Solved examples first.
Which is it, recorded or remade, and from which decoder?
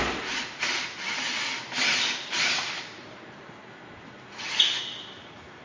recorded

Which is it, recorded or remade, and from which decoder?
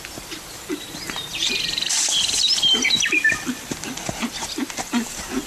recorded